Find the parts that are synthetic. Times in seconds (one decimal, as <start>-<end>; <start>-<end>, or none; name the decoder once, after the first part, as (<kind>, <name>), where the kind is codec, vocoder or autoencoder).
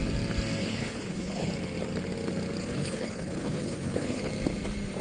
0.6-1.5 (codec, HILCodec); 2.6-4.3